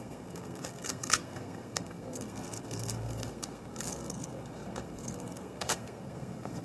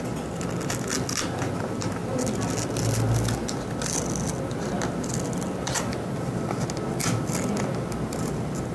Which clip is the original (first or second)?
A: second